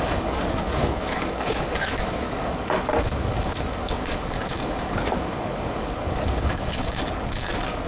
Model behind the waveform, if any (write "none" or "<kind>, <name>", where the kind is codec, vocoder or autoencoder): codec, DAC